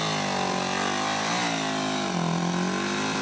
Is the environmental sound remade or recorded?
recorded